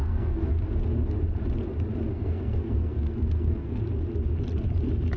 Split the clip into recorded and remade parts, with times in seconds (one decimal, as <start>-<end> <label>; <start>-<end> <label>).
0.0-0.6 remade; 0.6-2.1 recorded; 2.1-3.8 remade; 3.8-5.2 recorded